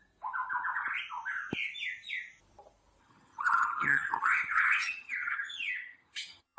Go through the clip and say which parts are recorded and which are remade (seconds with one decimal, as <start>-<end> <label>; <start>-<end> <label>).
0.0-3.0 recorded; 3.0-6.6 remade